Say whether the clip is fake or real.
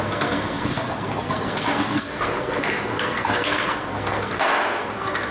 fake